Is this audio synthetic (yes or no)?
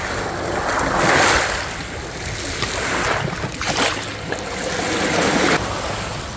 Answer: no